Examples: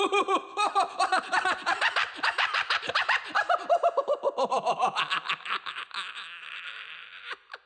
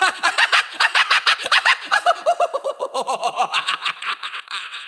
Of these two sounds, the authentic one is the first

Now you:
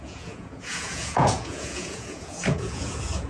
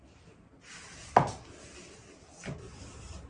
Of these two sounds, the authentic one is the second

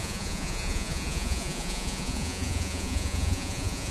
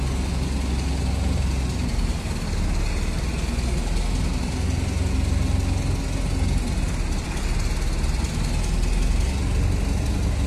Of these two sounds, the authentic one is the second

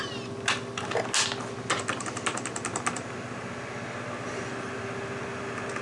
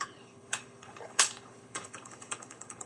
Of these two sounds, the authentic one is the first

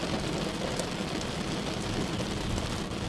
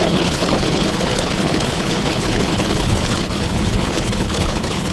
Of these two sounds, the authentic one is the first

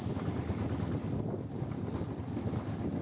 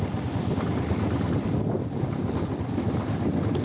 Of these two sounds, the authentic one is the first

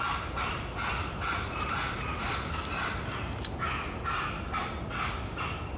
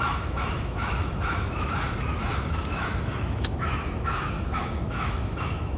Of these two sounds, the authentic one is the first